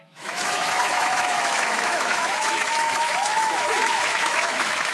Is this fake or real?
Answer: fake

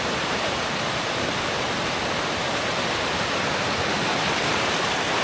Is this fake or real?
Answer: fake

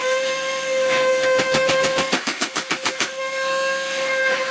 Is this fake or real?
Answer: fake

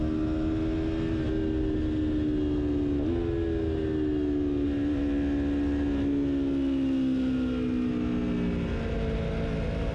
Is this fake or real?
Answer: real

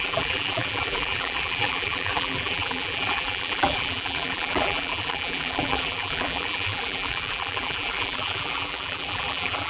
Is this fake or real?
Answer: fake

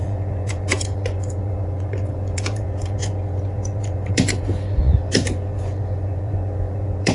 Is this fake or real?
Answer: fake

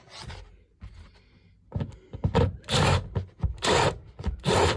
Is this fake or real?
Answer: real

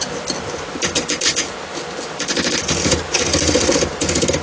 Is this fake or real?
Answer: real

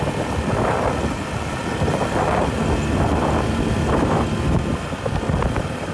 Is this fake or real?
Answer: real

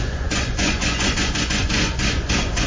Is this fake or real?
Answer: fake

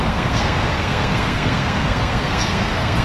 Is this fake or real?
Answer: fake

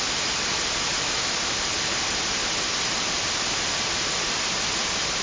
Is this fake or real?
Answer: real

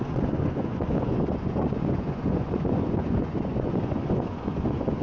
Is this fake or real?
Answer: fake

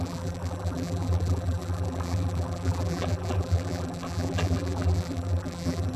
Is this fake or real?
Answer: fake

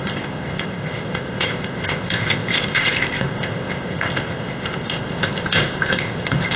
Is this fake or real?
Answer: fake